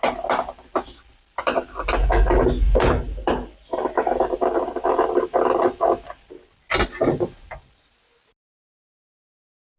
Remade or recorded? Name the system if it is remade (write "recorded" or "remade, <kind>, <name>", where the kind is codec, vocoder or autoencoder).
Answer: recorded